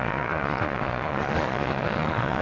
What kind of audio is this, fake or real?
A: fake